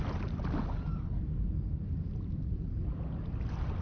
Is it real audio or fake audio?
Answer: real